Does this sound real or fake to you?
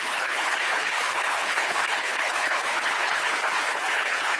fake